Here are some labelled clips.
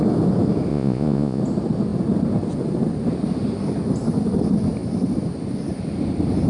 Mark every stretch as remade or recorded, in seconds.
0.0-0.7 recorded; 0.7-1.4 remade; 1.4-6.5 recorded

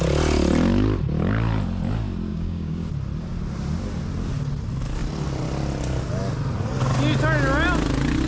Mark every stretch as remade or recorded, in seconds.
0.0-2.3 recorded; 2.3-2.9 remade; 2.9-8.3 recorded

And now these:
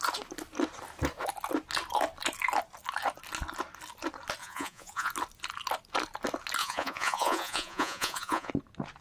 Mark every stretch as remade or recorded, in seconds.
0.0-4.4 recorded; 4.4-5.1 remade; 5.1-6.6 recorded; 6.6-8.5 remade; 8.5-9.0 recorded